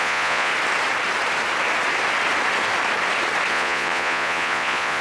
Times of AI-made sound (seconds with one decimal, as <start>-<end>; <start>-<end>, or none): 0.0-0.5; 3.5-5.0